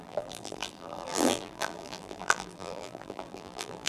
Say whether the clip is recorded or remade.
remade